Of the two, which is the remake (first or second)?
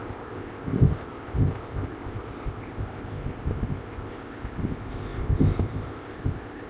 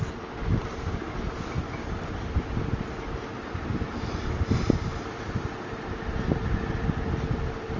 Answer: first